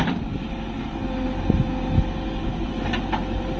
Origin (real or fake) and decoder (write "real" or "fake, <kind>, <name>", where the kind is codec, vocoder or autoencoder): real